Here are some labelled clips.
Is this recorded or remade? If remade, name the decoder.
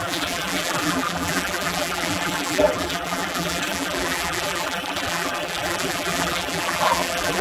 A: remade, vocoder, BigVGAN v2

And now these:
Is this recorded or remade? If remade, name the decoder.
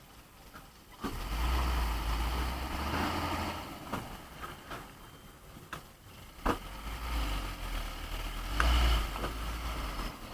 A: recorded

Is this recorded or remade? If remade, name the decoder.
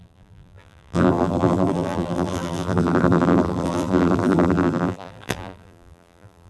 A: remade, vocoder, BigVGAN v2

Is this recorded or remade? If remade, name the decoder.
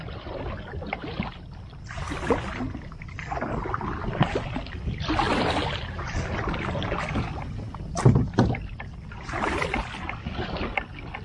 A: recorded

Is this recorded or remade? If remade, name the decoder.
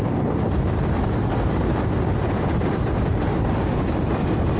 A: recorded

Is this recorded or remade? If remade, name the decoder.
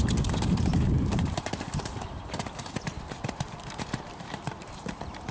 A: remade, vocoder, BigVGAN v2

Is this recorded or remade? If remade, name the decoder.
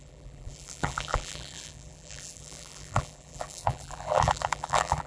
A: remade, vocoder, BigVGAN v2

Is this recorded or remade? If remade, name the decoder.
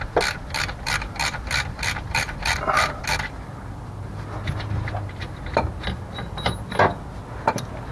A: recorded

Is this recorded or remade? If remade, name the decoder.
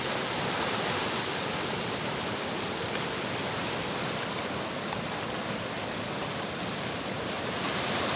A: remade, vocoder, BigVGAN v2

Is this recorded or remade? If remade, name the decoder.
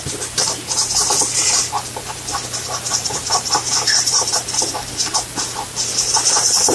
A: recorded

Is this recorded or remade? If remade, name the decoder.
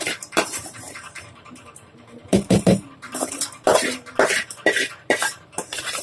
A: remade, vocoder, BigVGAN v2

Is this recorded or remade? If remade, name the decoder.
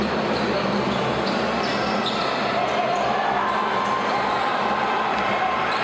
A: recorded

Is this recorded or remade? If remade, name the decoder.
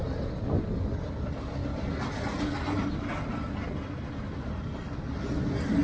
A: recorded